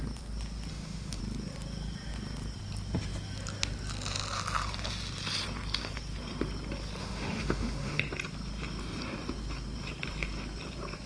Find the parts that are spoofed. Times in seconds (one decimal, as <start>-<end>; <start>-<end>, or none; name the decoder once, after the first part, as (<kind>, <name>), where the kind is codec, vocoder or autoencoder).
0.7-1.2 (autoencoder, DAC-VAE); 7.0-8.0